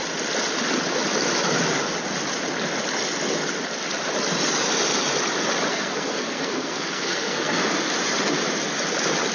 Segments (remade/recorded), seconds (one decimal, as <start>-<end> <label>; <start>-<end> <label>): 0.0-5.7 recorded; 5.7-7.6 remade; 7.6-9.3 recorded